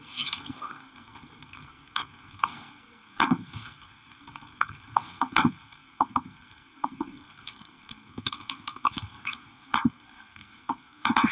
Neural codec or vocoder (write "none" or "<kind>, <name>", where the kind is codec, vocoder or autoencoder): codec, SNAC